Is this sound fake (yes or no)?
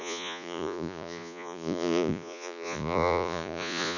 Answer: yes